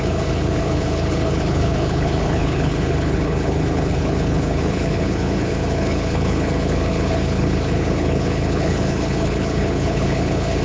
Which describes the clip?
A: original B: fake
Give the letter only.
B